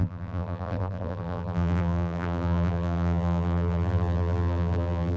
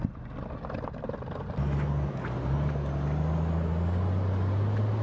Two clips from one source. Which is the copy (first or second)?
first